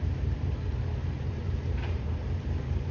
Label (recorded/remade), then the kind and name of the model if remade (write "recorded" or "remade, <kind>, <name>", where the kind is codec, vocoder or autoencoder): remade, vocoder, BigVGAN v2